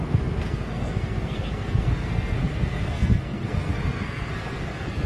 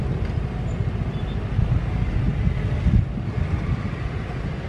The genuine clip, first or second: second